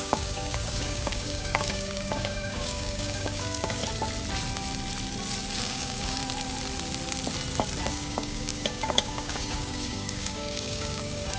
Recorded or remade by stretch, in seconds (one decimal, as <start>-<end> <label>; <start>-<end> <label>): 0.0-3.8 remade; 3.8-5.6 recorded; 5.6-6.2 remade; 6.2-7.9 recorded; 7.9-11.4 remade